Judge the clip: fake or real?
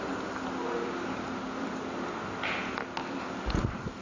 real